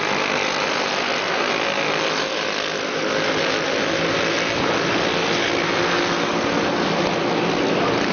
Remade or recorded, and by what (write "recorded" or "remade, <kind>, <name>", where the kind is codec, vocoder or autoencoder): recorded